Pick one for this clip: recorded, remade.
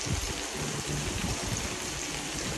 recorded